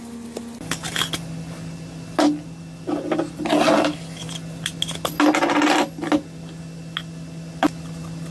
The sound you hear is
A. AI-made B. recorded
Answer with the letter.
B